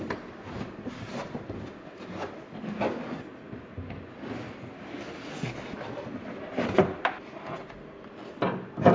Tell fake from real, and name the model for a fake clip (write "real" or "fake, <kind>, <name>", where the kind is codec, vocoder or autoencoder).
real